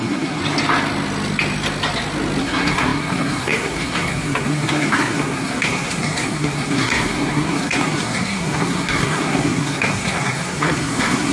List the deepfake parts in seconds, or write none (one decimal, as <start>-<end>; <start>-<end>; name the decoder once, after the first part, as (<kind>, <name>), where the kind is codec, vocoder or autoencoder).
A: 0.0-0.4 (codec, SNAC); 2.4-11.3